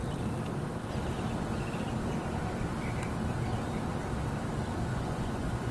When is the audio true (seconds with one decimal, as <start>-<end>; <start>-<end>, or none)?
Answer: 0.0-4.9